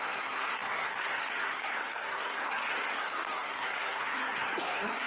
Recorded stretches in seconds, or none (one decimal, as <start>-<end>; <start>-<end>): none